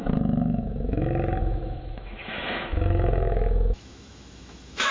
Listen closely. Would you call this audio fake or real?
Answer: fake